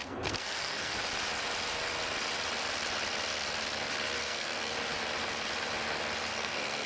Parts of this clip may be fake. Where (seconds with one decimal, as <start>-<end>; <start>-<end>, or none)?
0.0-0.9; 4.2-4.7; 6.3-6.9